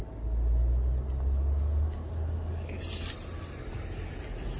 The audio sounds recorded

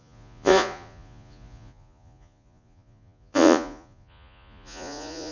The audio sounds remade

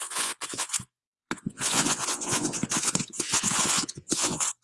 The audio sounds remade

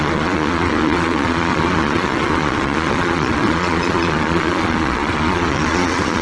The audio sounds remade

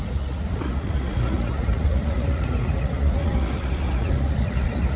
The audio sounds remade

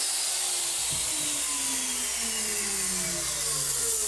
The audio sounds recorded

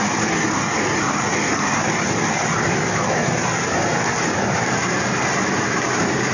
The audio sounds recorded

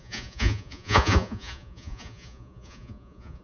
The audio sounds remade